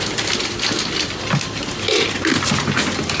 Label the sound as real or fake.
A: real